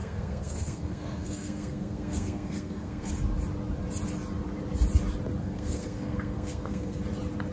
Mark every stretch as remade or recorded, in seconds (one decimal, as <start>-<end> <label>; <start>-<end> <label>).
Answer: 0.0-3.1 remade; 3.1-5.4 recorded; 5.4-7.0 remade; 7.0-7.5 recorded